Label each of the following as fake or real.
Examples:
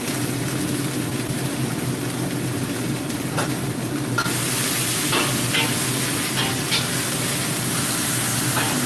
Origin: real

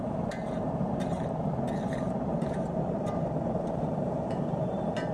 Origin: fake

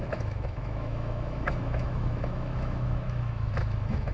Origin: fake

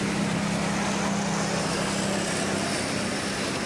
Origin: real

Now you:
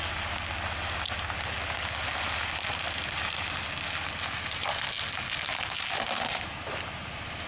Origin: real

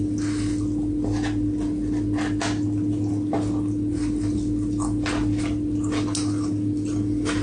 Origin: real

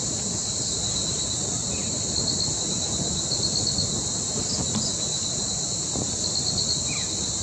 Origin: real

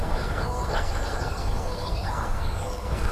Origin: fake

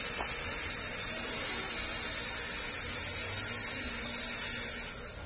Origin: real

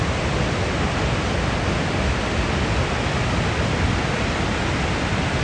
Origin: real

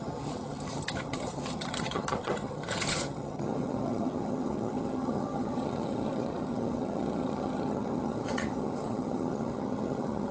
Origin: fake